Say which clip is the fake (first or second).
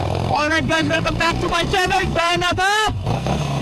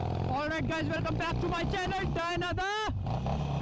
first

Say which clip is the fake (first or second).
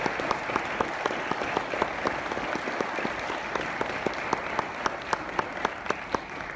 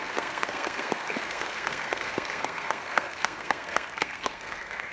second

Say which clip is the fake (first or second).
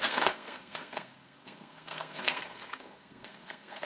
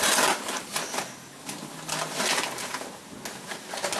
first